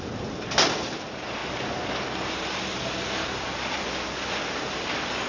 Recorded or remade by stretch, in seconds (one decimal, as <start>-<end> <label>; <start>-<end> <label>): 0.0-5.3 recorded